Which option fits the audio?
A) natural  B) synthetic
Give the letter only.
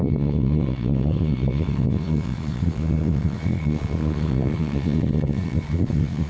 B